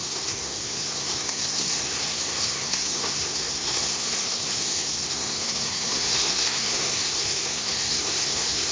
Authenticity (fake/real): fake